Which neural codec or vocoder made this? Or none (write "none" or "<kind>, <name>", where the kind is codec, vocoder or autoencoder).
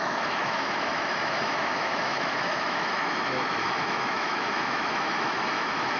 autoencoder, DAC-VAE